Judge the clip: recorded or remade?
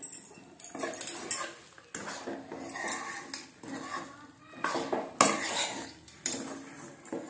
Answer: recorded